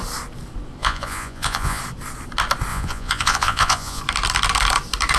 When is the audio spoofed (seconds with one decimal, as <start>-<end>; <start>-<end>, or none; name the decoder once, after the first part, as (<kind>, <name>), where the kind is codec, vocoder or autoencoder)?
0.8-1.8 (vocoder, Vocos); 2.7-4.0